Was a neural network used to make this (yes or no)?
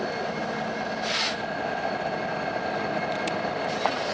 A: no